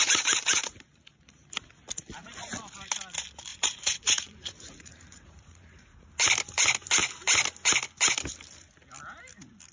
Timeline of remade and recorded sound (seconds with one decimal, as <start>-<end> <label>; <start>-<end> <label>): 0.0-0.7 remade; 0.7-3.5 recorded; 3.5-6.1 remade; 6.1-9.7 recorded